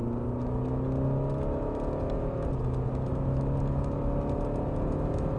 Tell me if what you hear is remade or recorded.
recorded